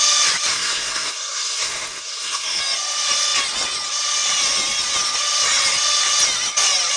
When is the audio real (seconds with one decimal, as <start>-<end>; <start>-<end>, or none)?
0.0-0.5; 2.6-7.0